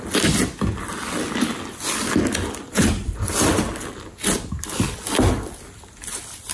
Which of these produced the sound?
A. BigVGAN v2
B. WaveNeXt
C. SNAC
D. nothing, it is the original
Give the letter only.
D